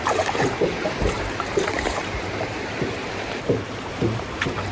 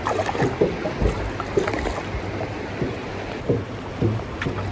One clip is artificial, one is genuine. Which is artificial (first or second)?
first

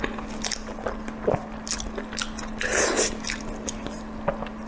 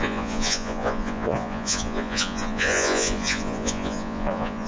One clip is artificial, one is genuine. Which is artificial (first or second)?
second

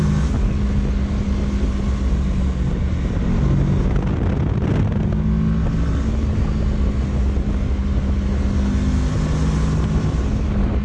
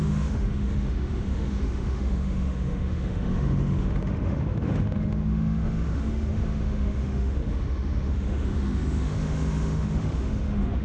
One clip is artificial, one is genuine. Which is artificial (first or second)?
second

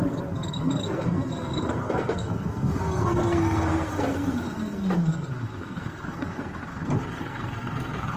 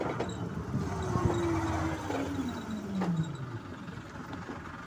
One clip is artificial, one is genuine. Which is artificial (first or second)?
first